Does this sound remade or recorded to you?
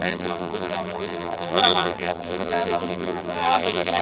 remade